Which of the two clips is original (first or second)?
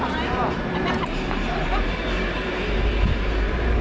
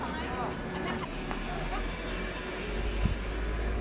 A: second